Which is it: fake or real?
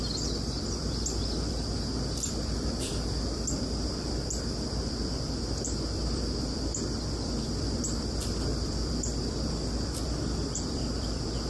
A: fake